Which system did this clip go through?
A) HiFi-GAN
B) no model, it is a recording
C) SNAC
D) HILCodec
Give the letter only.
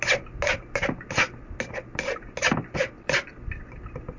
B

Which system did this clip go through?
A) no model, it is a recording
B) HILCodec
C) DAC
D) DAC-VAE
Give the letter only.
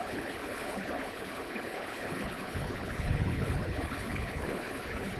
B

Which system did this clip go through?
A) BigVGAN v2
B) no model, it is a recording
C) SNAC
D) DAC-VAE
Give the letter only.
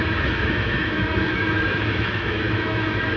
D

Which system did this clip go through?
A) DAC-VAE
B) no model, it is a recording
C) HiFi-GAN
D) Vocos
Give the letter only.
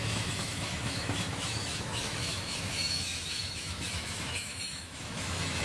A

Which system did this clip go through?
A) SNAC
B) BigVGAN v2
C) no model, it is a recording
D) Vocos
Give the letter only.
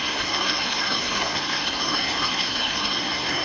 A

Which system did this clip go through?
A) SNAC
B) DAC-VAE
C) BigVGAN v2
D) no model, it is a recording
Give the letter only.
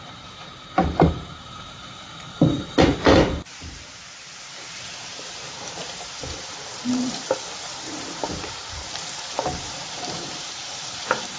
C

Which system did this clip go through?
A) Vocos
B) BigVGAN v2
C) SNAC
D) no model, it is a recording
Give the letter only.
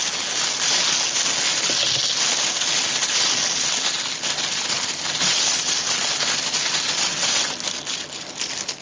D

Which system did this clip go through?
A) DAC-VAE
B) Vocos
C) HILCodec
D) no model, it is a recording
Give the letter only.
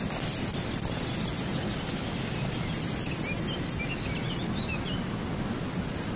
D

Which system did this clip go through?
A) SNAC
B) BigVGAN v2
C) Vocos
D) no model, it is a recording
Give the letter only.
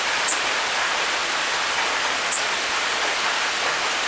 D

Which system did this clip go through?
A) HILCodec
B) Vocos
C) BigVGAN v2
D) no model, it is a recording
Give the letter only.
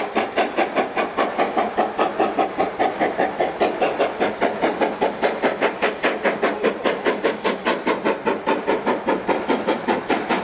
D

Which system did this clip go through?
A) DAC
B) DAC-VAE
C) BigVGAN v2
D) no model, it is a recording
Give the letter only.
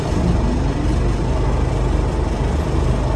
D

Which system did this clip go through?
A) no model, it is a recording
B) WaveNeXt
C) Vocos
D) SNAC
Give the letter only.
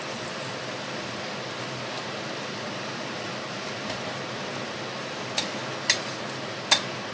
A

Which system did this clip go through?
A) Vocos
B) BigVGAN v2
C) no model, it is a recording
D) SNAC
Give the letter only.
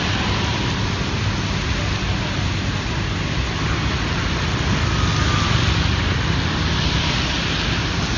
C